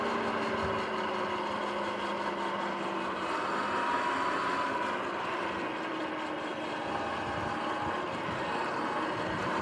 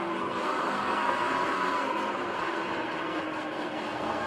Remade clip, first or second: second